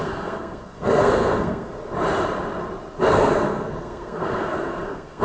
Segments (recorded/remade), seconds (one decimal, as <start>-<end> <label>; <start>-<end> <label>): 0.0-1.7 remade; 1.7-3.0 recorded; 3.0-5.2 remade